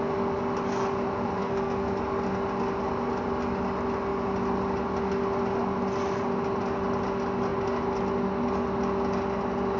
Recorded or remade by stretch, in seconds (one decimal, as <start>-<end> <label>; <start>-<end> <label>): 0.0-1.4 recorded; 1.4-1.9 remade; 1.9-9.8 recorded

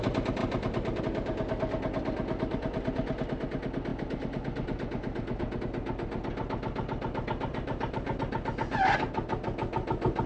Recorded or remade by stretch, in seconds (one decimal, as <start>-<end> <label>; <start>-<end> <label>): 0.0-0.4 recorded; 0.4-1.0 remade; 1.0-7.5 recorded; 7.5-8.2 remade; 8.2-10.3 recorded